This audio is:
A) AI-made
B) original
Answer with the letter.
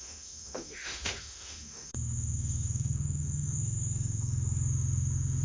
A